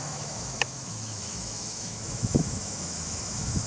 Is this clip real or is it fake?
fake